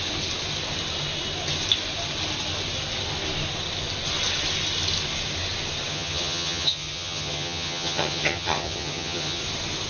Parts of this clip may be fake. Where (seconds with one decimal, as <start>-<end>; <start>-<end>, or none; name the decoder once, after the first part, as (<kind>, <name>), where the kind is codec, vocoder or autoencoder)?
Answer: 5.9-9.4 (vocoder, HiFi-GAN)